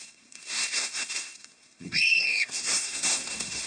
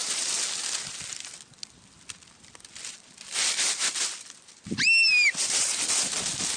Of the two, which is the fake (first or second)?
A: first